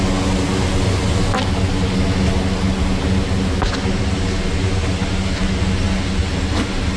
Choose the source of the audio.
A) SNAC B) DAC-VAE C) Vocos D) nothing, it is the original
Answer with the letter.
D